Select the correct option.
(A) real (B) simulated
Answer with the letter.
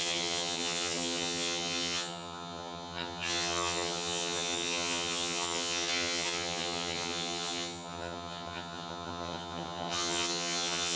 B